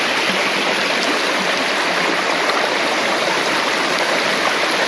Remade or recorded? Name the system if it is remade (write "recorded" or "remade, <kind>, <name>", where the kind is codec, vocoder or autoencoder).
recorded